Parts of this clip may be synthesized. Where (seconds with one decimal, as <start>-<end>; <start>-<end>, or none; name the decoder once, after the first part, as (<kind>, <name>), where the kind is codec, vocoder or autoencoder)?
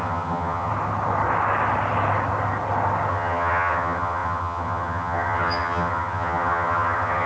0.0-0.7 (vocoder, HiFi-GAN); 3.1-7.3